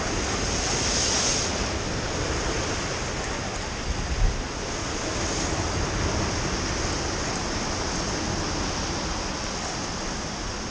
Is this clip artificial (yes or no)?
no